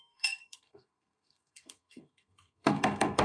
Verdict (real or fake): fake